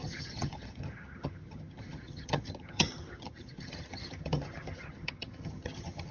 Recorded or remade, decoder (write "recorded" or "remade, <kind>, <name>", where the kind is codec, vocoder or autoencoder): remade, vocoder, HiFi-GAN